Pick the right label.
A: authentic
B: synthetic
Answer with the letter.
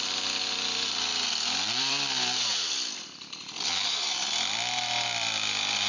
B